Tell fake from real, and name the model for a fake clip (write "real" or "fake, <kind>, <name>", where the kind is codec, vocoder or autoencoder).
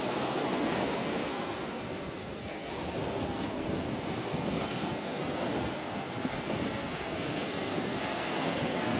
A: fake, codec, SNAC